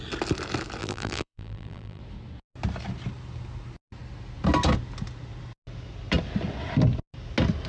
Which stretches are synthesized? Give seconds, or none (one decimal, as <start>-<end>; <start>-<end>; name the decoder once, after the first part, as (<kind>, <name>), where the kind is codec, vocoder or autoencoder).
0.8-2.0 (vocoder, BigVGAN v2)

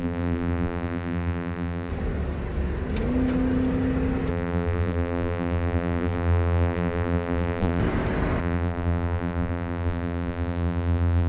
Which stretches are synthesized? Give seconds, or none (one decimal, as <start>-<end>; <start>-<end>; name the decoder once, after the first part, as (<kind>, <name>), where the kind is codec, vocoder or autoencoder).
0.0-1.9 (vocoder, BigVGAN v2); 4.3-7.8; 8.4-11.3